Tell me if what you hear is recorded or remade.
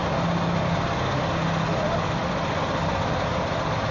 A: recorded